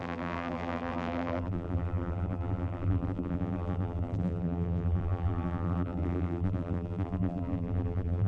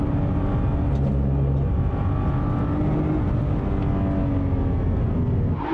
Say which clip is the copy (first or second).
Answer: first